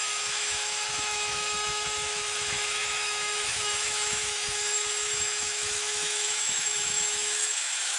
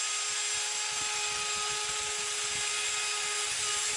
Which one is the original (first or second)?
second